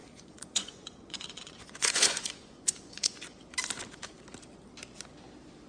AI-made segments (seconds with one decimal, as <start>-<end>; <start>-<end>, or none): 0.0-3.4